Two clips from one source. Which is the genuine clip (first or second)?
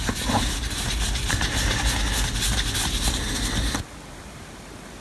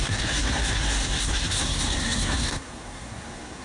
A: first